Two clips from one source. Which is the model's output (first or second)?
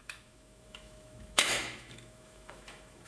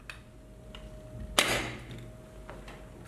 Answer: first